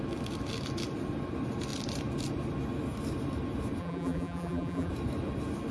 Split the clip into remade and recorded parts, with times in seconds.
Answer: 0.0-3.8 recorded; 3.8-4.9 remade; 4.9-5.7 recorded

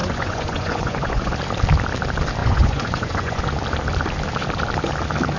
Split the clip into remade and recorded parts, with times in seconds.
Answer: 0.0-1.3 remade; 1.3-2.4 recorded; 2.4-3.4 remade; 3.4-5.4 recorded

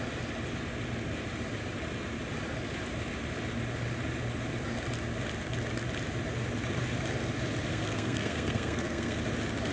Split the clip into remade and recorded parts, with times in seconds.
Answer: 0.0-7.7 recorded; 7.7-9.2 remade; 9.2-9.7 recorded

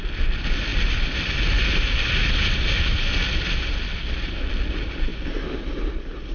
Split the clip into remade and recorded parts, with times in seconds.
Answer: 0.0-6.3 recorded